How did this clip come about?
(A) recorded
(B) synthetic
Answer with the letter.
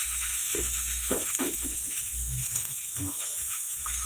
B